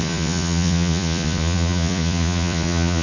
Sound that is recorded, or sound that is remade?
remade